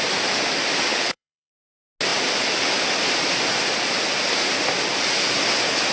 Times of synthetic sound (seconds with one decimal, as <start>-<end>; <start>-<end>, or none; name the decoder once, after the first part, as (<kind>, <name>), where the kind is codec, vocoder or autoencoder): 0.9-1.5 (codec, HILCodec)